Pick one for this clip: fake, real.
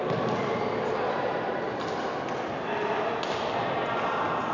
real